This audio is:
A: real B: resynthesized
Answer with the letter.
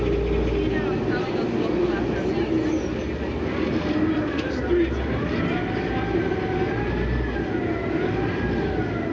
A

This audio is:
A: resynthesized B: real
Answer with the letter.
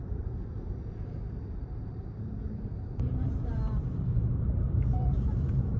A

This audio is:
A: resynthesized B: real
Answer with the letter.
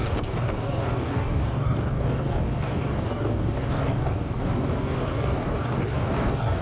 A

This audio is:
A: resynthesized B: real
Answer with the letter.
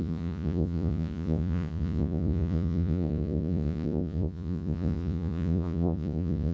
A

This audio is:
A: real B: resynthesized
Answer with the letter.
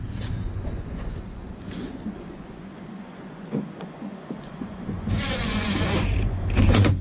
B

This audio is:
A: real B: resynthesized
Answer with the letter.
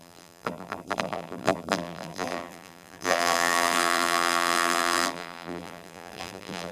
B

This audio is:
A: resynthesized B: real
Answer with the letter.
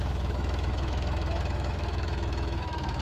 A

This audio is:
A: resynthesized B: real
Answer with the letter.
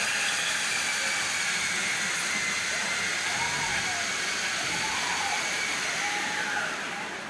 B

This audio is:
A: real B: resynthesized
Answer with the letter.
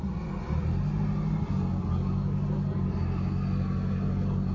A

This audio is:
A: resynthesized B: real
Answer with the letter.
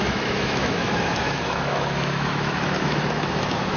A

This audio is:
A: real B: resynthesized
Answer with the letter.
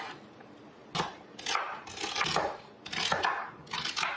A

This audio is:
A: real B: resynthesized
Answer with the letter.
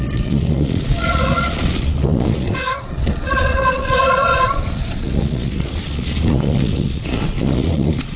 B